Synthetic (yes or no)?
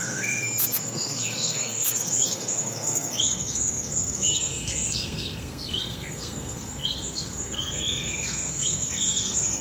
yes